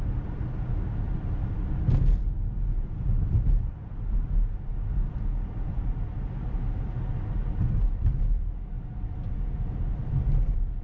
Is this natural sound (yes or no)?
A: yes